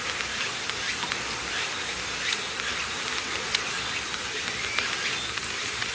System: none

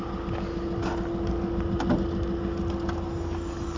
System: none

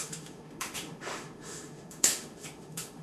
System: autoencoder, DAC-VAE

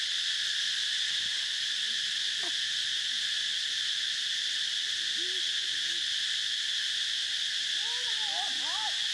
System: none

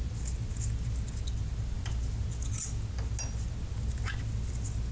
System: none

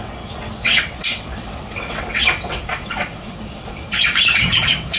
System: vocoder, WaveNeXt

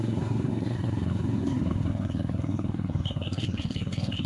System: codec, SNAC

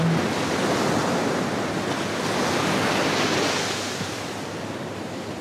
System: none